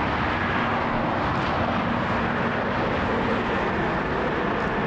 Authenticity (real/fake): real